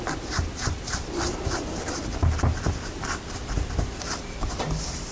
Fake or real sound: fake